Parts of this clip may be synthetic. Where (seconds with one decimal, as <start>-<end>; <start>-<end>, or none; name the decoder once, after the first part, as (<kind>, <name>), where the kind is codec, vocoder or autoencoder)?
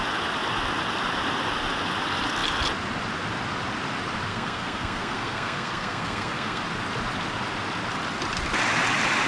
4.3-6.6 (codec, SNAC)